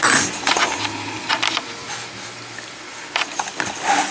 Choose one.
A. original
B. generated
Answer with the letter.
A